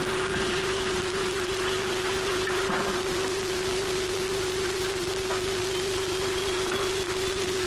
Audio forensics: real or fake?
real